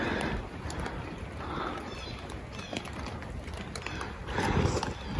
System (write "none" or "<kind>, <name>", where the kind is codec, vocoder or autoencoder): none